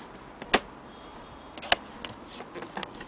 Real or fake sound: real